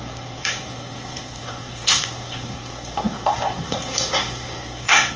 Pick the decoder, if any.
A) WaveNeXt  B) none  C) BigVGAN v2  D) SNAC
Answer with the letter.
D